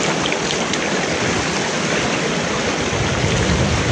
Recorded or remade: recorded